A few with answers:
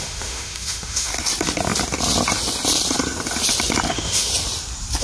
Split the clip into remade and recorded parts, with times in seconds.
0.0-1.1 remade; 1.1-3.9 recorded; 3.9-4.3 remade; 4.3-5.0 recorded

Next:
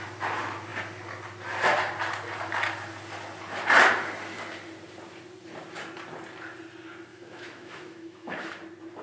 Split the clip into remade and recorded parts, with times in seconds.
0.0-7.1 recorded; 7.1-8.5 remade; 8.5-9.0 recorded

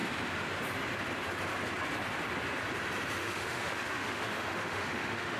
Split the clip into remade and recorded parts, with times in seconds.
0.0-3.2 recorded; 3.2-5.4 remade

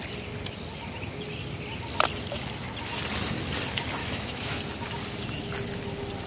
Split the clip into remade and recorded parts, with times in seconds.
0.0-4.0 recorded; 4.0-4.6 remade; 4.6-6.3 recorded

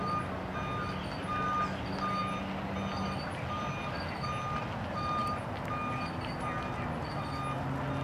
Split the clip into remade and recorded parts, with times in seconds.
0.0-8.0 recorded

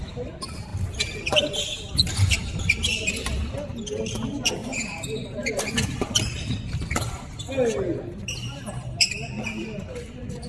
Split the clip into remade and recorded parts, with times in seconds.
0.0-10.5 recorded

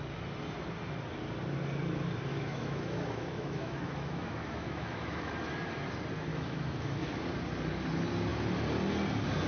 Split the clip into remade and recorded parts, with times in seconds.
0.0-2.3 recorded; 2.3-5.3 remade; 5.3-6.3 recorded; 6.3-7.2 remade; 7.2-9.5 recorded

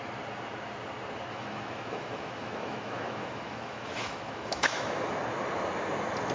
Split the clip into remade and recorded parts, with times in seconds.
0.0-1.3 recorded; 1.3-5.1 remade; 5.1-6.3 recorded